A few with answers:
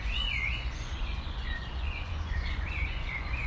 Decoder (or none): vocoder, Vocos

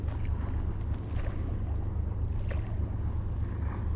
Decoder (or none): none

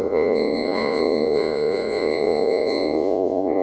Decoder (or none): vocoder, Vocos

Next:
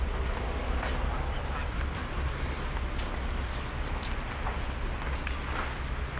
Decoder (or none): none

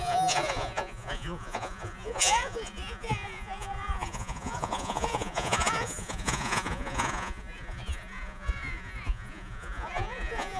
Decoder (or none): vocoder, Vocos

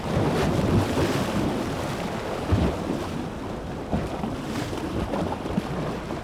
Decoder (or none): none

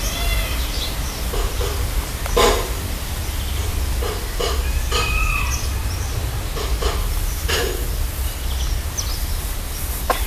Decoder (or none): none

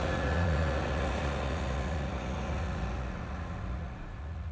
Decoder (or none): vocoder, Vocos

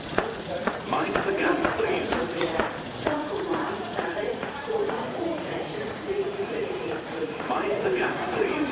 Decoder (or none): vocoder, Vocos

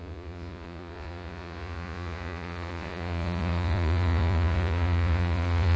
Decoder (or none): vocoder, Vocos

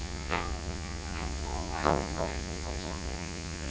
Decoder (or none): vocoder, Vocos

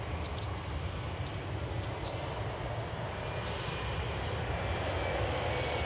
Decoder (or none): none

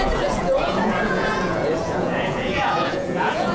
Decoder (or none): vocoder, Vocos